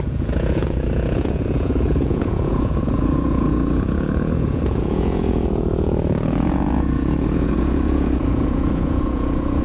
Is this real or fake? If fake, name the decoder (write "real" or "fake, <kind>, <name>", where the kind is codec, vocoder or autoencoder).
fake, vocoder, Vocos